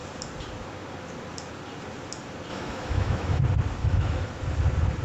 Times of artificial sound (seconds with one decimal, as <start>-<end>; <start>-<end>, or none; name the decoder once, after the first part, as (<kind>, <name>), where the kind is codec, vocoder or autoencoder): 2.5-3.4 (autoencoder, DAC-VAE); 3.8-4.3